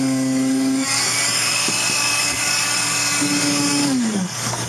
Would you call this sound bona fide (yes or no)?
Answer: no